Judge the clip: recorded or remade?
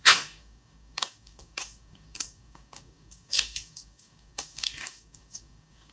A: remade